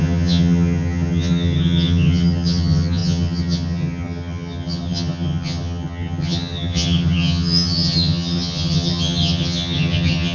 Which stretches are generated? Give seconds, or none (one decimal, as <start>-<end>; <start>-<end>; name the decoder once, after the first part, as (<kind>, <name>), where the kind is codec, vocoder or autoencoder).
0.0-10.3 (vocoder, HiFi-GAN)